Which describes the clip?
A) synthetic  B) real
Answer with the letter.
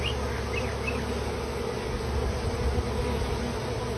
B